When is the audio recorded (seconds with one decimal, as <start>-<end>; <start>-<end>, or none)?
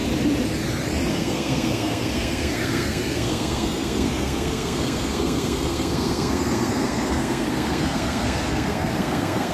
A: 0.0-1.1